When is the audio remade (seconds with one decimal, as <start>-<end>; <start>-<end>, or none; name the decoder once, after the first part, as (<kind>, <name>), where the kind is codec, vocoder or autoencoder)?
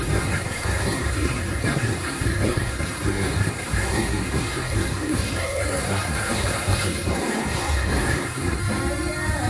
0.0-8.6 (codec, SNAC)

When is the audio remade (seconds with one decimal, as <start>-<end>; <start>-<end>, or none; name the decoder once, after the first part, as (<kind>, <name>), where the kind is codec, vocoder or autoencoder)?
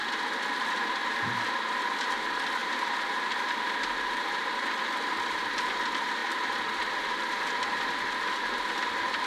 none